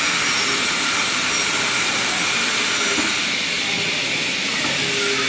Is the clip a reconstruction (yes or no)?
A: no